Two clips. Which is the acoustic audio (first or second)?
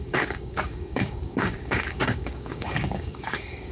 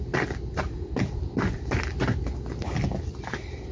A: second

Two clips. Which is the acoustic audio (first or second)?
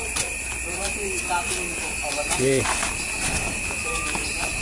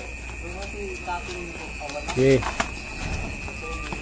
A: second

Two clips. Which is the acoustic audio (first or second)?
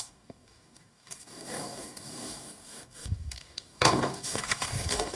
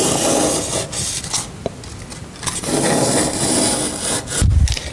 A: second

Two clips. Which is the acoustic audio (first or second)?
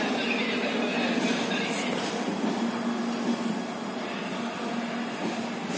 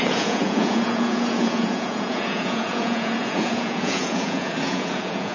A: first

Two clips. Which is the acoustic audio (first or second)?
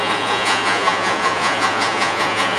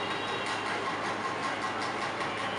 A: second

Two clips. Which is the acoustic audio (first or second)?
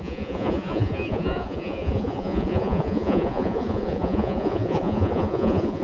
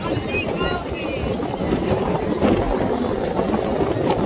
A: second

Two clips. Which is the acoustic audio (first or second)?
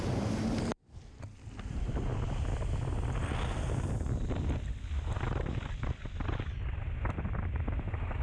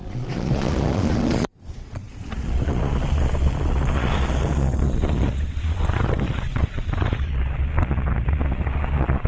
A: first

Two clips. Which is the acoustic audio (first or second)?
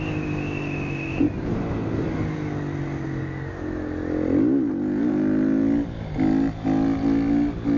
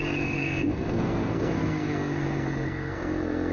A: first